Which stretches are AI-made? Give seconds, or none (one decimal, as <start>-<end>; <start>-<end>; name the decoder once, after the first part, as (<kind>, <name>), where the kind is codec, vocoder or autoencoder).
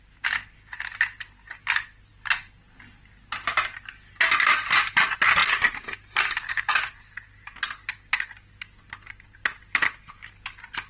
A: none